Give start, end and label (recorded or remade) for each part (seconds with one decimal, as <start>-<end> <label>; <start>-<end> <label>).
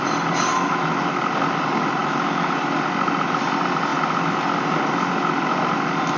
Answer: 0.0-0.5 recorded; 0.5-1.2 remade; 1.2-2.0 recorded; 2.0-2.5 remade; 2.5-6.2 recorded